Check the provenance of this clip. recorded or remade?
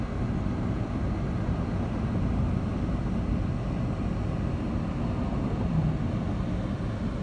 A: recorded